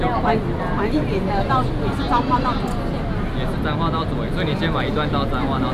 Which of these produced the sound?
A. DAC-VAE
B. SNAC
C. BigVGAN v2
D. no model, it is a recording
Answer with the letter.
D